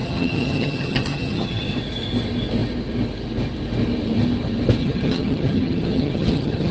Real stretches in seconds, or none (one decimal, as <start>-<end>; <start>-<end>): 1.6-4.8